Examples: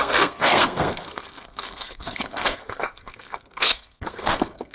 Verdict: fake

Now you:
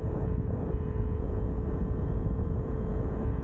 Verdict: fake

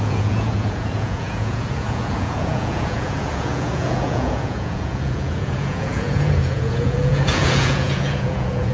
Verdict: fake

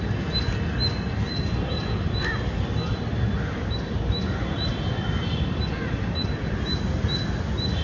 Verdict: real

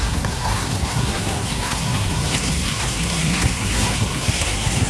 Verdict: fake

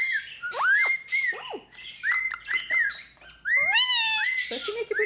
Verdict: real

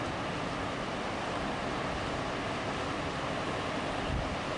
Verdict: real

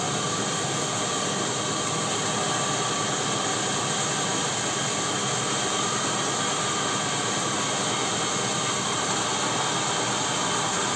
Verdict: real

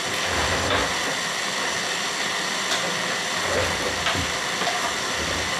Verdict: real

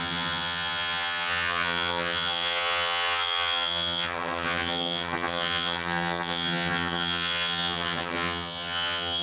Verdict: fake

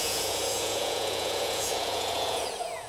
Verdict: fake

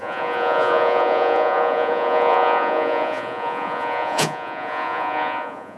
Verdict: fake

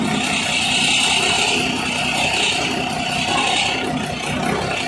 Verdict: real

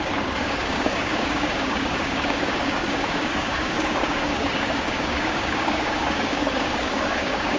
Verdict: fake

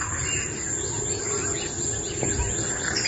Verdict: real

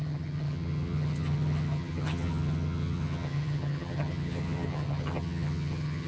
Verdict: fake